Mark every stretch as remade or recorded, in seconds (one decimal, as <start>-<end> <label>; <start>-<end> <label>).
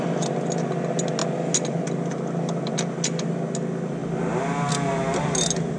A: 0.0-5.8 recorded